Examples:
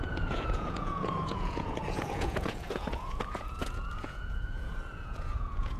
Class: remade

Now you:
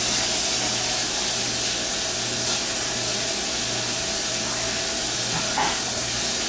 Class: recorded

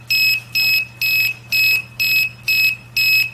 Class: recorded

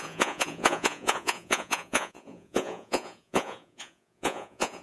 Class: remade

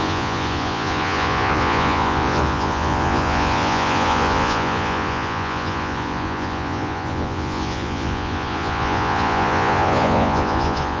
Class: remade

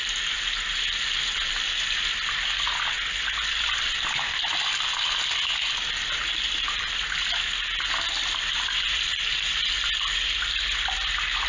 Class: recorded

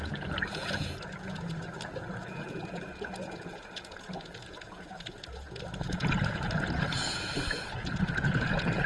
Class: remade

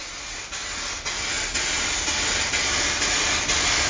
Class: recorded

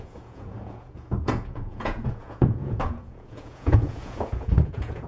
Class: remade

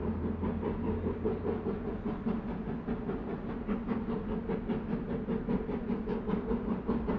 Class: recorded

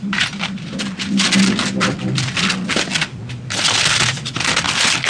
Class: recorded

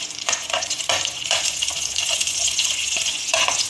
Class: remade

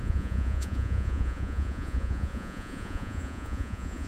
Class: remade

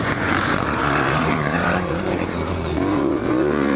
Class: remade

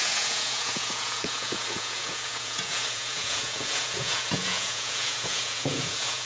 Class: remade